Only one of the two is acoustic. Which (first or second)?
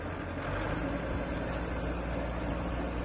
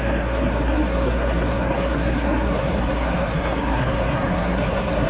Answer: first